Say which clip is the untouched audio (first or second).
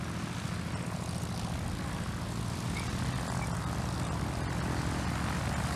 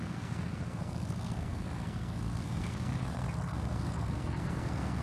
first